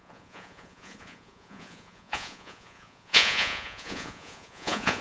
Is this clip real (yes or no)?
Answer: no